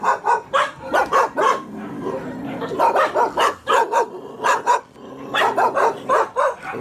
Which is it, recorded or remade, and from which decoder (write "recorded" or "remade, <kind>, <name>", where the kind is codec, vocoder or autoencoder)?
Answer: recorded